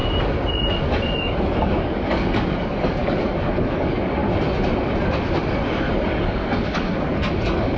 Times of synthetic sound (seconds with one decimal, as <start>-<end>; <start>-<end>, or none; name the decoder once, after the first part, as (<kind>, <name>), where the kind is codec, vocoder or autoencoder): 1.2-4.2 (codec, DAC); 5.9-7.8